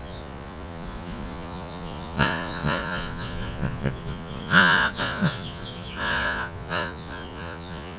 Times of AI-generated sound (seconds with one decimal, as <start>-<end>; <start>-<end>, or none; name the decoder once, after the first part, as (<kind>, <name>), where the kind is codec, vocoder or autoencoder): 0.0-8.0 (vocoder, Vocos)